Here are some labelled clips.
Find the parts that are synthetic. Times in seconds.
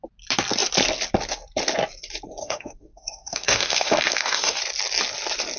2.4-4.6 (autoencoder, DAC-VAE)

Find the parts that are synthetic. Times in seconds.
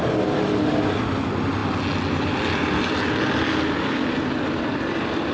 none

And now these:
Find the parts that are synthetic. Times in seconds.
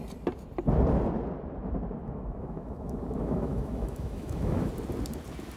2.0-4.7 (autoencoder, DAC-VAE)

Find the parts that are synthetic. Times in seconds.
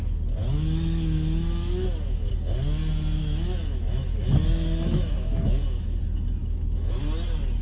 0.4-2.3 (autoencoder, DAC-VAE); 3.2-6.0; 6.4-7.0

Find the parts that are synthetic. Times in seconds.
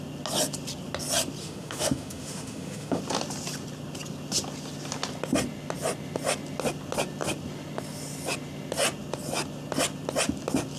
1.4-3.0 (autoencoder, DAC-VAE)